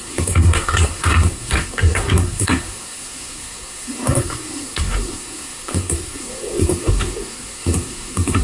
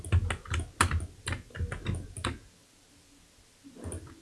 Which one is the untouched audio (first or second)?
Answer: second